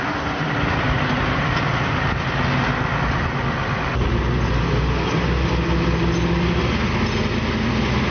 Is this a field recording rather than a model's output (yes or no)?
yes